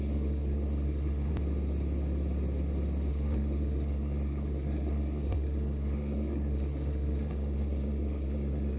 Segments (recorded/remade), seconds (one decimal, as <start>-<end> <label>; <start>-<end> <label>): 0.0-1.3 remade; 1.3-3.1 recorded; 3.1-8.8 remade